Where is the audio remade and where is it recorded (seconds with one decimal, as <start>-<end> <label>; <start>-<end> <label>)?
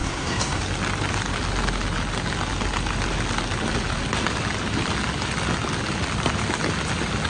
0.0-0.6 remade; 0.6-7.3 recorded